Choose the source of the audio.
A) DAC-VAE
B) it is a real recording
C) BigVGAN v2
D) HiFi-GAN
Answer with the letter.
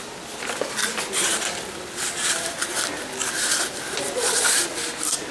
C